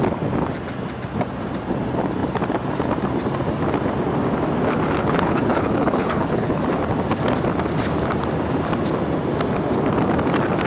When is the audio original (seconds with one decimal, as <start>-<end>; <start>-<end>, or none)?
0.0-5.0; 6.6-10.7